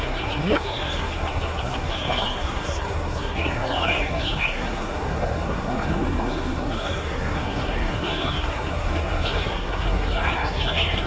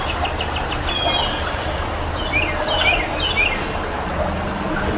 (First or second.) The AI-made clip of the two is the first